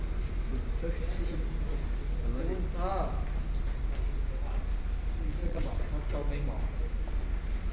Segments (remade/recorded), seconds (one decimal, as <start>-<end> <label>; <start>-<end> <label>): 0.0-5.4 recorded; 5.4-5.9 remade; 5.9-7.7 recorded